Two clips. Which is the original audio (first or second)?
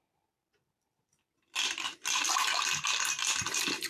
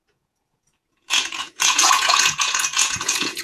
first